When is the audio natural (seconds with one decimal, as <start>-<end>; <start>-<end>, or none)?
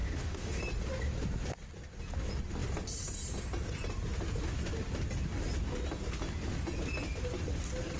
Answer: 0.6-8.0